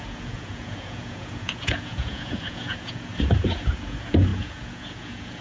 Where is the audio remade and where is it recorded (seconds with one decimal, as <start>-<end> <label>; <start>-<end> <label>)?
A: 0.0-5.4 remade